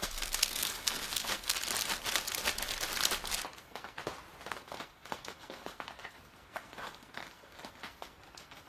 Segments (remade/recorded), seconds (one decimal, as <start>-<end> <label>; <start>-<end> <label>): 0.0-1.6 remade; 1.6-3.6 recorded; 3.6-4.0 remade; 4.0-4.5 recorded; 4.5-8.7 remade